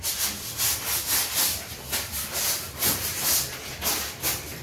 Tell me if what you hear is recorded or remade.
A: recorded